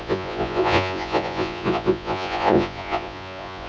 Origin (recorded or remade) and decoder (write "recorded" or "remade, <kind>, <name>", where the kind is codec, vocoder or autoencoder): remade, vocoder, Vocos